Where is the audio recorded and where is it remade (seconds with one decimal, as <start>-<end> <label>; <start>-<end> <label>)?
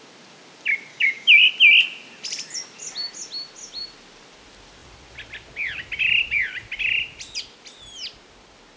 0.0-0.9 recorded; 0.9-1.5 remade; 1.5-8.8 recorded